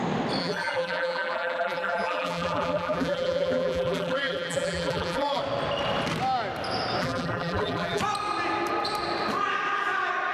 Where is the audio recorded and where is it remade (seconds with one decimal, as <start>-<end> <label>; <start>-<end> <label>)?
0.0-0.4 recorded; 0.4-5.4 remade; 5.4-7.0 recorded; 7.0-8.0 remade; 8.0-10.3 recorded